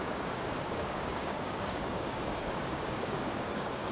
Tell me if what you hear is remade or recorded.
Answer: remade